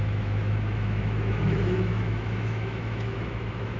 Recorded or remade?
remade